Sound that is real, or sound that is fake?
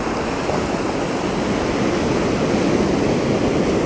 real